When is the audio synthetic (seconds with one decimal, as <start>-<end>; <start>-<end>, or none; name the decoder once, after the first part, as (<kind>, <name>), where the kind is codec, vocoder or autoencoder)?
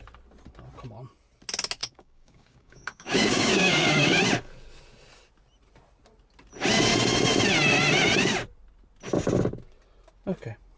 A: 1.8-4.2 (codec, DAC)